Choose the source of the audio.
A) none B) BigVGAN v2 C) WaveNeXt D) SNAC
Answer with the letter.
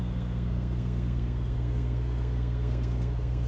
D